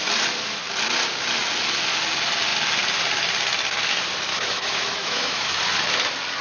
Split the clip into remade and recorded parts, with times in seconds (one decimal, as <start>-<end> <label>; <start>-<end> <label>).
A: 0.0-4.3 recorded; 4.3-5.6 remade; 5.6-6.4 recorded